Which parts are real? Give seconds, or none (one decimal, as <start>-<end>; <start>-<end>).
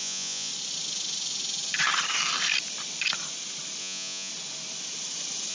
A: 0.5-3.8; 4.3-5.5